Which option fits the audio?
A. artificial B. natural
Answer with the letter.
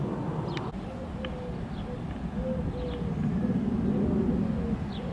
B